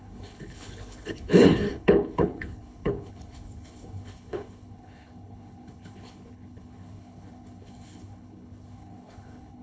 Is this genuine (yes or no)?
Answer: no